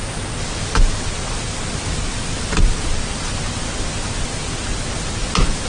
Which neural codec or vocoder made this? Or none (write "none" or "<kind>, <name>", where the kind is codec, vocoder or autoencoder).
none